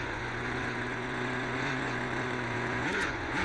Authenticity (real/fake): fake